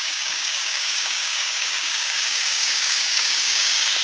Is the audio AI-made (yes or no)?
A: yes